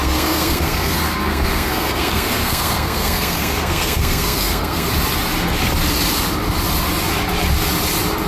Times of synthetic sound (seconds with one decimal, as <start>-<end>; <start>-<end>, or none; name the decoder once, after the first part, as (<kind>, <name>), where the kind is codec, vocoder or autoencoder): 0.0-4.9 (codec, SNAC)